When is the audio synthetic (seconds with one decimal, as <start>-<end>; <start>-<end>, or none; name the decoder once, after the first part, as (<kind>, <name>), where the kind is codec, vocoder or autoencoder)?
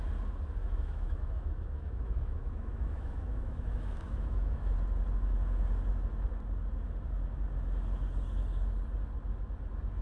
0.6-4.7 (autoencoder, DAC-VAE)